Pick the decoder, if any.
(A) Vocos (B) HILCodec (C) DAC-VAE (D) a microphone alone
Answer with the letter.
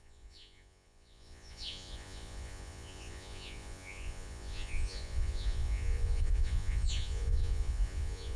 A